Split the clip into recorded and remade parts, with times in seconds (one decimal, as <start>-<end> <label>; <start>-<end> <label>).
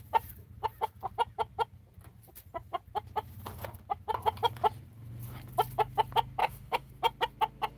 0.0-6.4 recorded; 6.4-6.9 remade; 6.9-7.8 recorded